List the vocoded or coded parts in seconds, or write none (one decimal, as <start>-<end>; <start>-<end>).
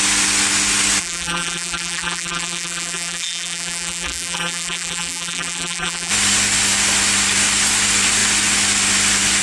1.0-6.1